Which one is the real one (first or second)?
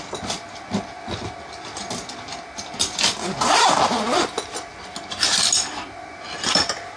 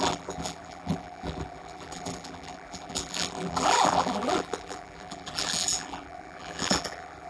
first